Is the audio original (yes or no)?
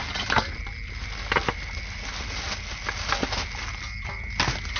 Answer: yes